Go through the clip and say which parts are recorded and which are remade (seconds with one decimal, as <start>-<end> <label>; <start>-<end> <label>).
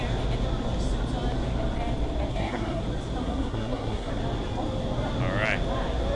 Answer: 0.0-2.3 recorded; 2.3-2.8 remade; 2.8-3.2 recorded; 3.2-4.1 remade; 4.1-6.2 recorded